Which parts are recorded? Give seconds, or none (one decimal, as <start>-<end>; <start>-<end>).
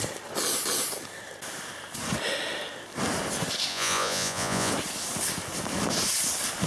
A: 0.0-3.7; 4.7-6.7